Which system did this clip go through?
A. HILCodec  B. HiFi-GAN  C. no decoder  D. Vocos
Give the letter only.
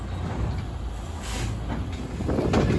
C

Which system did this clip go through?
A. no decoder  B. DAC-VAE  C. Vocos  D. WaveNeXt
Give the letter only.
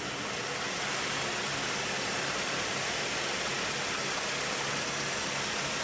A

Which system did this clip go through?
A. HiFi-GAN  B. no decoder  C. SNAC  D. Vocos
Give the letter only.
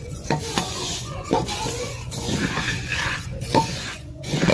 D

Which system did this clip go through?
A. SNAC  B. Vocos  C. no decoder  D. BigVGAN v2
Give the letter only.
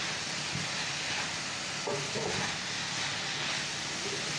C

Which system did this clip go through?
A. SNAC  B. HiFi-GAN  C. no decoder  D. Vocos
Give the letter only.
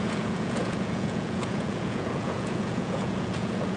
D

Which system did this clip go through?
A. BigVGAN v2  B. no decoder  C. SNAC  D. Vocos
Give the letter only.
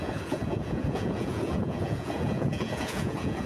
D